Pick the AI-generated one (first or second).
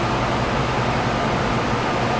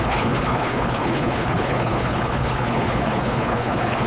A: second